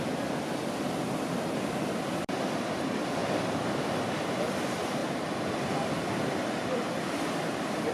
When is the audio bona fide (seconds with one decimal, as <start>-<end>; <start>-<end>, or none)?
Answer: 3.2-4.4